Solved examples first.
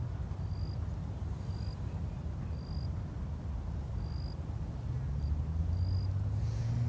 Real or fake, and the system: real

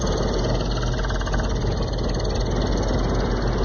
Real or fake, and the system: real